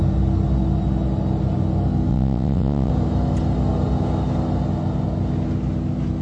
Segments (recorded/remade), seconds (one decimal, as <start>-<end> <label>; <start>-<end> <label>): 0.0-2.1 recorded; 2.1-2.9 remade; 2.9-6.2 recorded